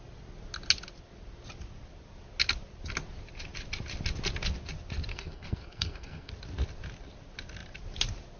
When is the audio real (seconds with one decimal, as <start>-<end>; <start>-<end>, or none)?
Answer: 0.0-5.1; 6.3-8.4